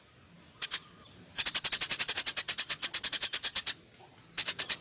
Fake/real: real